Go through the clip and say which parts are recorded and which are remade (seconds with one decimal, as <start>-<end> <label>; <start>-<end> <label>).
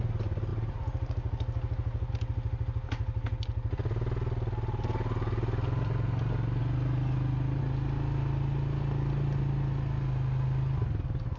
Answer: 0.0-11.4 recorded